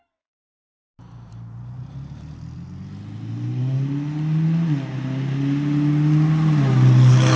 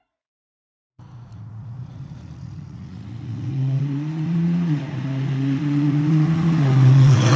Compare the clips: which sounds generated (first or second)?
second